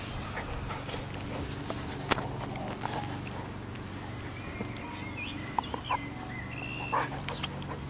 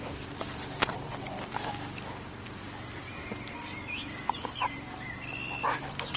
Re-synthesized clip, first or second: second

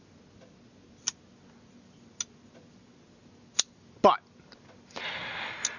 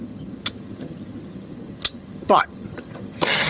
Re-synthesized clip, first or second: second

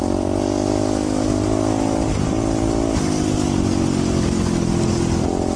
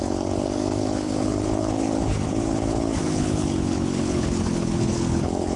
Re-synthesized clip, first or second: second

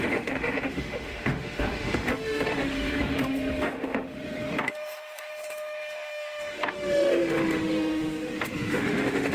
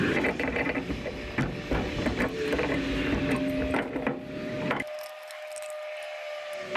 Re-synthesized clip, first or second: first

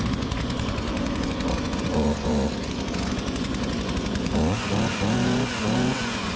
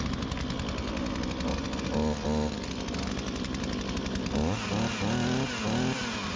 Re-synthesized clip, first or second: first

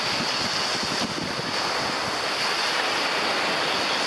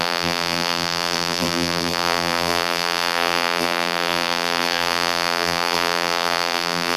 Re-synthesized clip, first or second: second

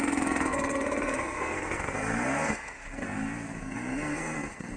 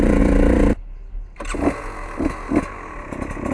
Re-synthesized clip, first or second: first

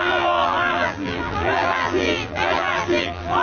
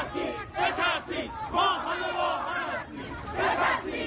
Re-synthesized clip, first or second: first